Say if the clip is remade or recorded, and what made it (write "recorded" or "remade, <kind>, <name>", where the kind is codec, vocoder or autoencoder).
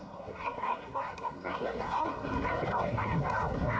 remade, codec, SNAC